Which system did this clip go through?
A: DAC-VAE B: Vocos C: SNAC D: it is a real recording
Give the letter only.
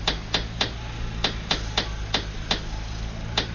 D